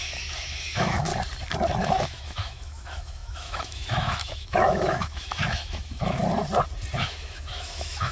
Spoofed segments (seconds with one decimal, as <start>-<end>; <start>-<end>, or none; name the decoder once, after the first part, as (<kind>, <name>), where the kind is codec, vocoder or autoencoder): 0.0-1.1 (autoencoder, DAC-VAE); 1.8-6.2; 7.0-8.1

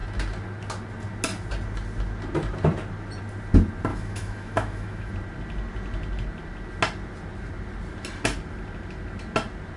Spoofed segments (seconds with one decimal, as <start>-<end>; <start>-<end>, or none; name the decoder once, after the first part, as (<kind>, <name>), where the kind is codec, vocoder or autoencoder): 3.9-5.1 (autoencoder, DAC-VAE)